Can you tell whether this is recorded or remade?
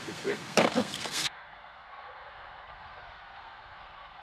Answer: remade